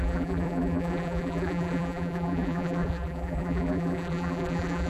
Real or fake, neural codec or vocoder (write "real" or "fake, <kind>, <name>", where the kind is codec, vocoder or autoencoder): fake, vocoder, BigVGAN v2